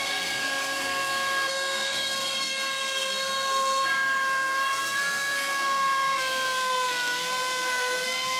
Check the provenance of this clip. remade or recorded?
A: remade